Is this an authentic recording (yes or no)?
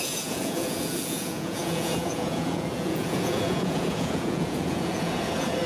no